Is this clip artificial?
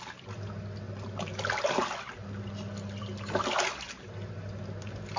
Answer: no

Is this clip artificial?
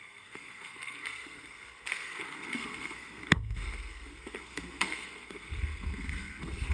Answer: yes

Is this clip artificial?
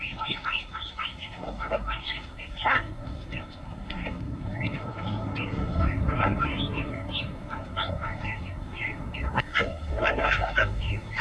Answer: yes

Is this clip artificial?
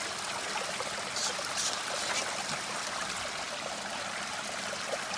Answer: no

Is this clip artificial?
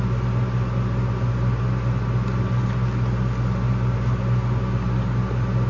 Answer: no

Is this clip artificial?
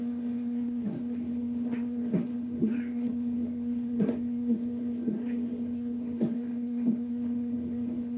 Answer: yes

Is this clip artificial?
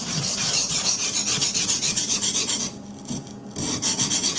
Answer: no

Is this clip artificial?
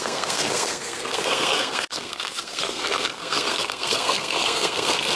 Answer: yes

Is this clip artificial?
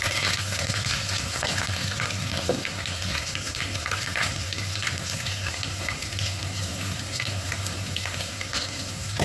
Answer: yes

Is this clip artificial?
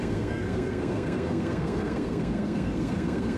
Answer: yes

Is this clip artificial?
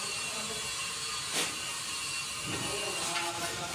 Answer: no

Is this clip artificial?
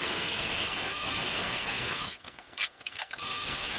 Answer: yes